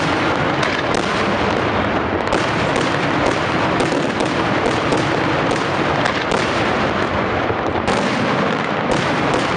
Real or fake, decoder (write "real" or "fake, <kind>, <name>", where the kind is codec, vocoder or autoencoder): real